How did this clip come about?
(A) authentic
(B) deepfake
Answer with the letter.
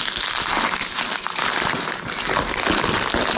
A